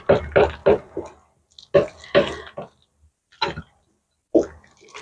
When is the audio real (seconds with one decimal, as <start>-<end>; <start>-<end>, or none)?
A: 0.0-5.0